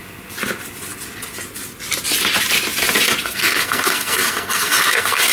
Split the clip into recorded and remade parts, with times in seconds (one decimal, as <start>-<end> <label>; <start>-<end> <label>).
0.0-3.2 recorded; 3.2-5.3 remade